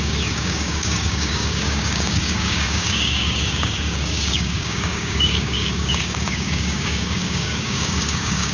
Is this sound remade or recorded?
remade